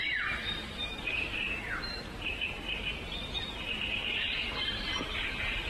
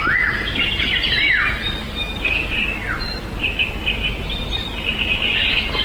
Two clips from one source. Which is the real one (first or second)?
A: second